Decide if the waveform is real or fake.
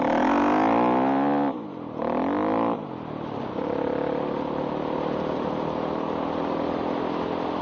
real